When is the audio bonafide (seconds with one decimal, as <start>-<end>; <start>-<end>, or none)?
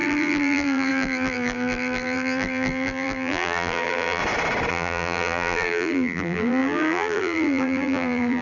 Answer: 4.2-4.7